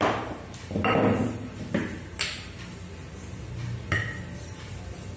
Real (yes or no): yes